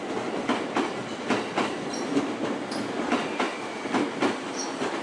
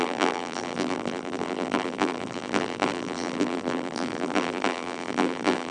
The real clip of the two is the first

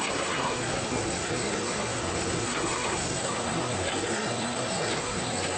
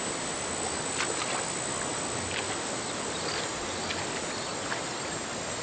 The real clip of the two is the second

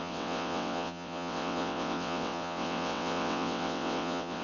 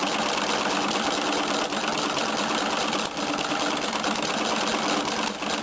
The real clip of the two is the second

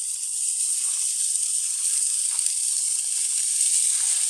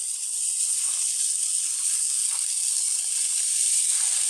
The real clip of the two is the second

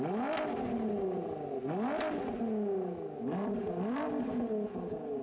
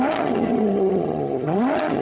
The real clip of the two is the first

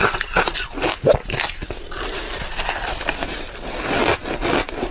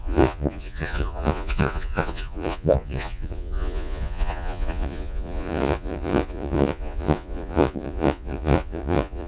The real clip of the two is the first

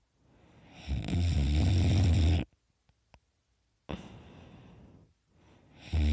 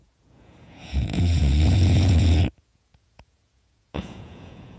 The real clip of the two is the first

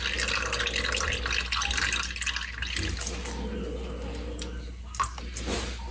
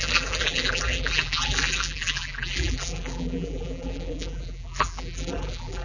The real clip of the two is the first